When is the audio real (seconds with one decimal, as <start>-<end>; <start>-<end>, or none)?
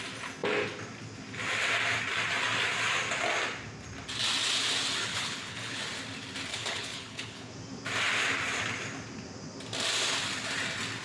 0.0-5.1; 5.8-6.5; 7.5-11.0